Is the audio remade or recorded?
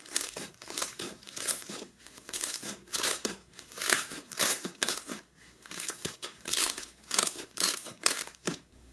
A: remade